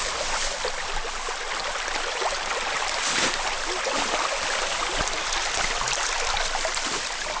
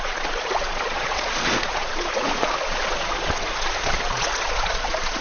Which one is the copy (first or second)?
second